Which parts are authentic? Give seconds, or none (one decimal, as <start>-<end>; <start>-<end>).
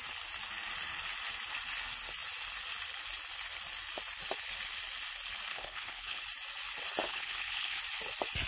0.0-5.5; 6.2-7.0; 7.8-8.5